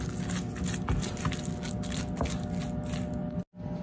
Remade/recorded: recorded